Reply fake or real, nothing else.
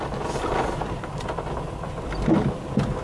real